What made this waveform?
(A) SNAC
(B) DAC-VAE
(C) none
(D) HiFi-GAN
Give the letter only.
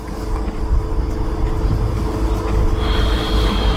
C